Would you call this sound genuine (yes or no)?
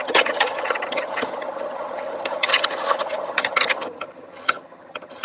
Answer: no